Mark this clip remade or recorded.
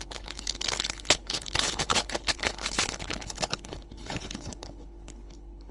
remade